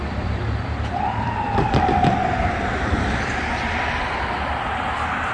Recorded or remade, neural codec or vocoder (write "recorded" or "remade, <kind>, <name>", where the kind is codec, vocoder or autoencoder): remade, vocoder, BigVGAN v2